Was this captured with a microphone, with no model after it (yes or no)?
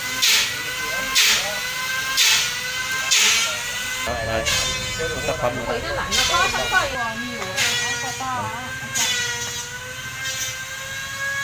yes